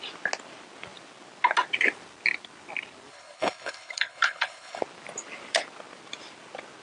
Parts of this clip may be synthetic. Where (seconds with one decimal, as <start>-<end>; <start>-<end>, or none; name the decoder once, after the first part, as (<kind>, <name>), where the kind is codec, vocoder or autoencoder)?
3.1-4.8 (codec, HILCodec)